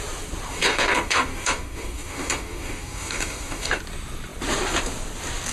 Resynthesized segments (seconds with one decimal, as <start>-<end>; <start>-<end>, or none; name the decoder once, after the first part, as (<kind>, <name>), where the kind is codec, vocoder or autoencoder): 0.5-3.8 (codec, DAC)